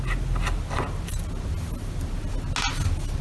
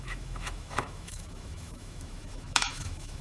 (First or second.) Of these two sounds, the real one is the first